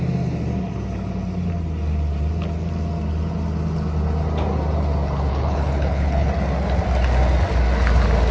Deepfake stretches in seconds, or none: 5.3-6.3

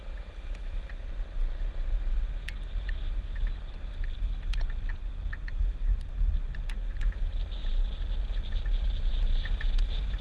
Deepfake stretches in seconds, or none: none